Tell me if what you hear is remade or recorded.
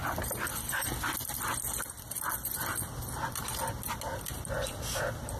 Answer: recorded